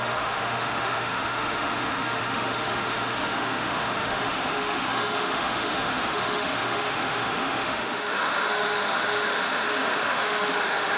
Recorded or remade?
remade